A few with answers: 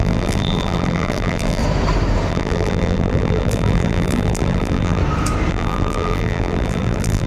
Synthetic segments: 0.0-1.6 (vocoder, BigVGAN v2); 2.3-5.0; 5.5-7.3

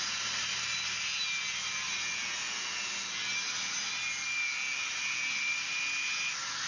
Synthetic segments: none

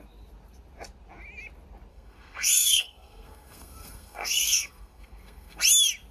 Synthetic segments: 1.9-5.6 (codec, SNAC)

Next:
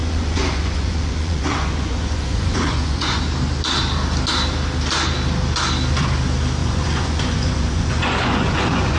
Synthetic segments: 0.0-3.2 (vocoder, Vocos); 6.6-9.0

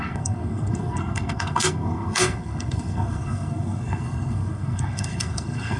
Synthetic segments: 0.0-5.8 (codec, SNAC)

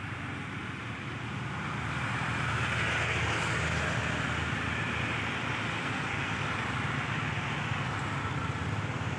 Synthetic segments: 5.8-6.4 (codec, SNAC)

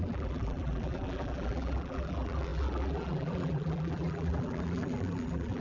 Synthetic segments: 0.0-5.6 (vocoder, BigVGAN v2)